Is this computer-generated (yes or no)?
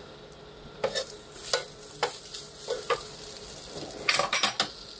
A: no